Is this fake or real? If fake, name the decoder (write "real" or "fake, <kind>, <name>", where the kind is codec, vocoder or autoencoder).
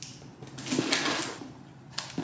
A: real